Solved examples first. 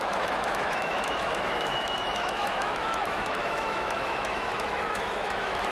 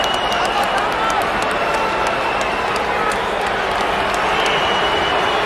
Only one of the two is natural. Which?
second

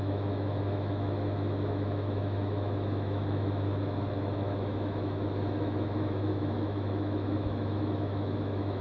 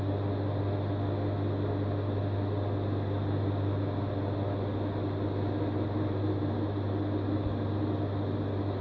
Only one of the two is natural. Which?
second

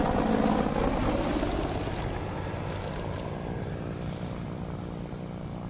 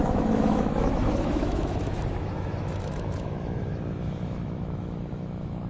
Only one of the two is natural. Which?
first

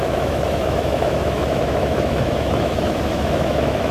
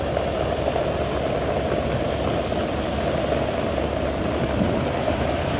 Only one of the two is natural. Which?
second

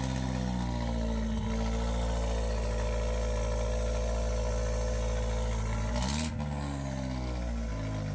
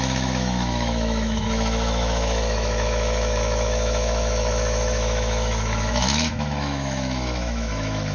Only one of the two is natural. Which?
first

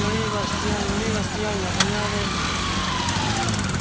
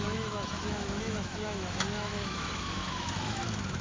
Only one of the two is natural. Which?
first